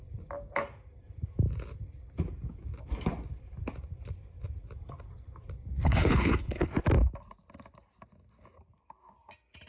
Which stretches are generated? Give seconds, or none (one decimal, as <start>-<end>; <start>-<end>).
5.8-6.7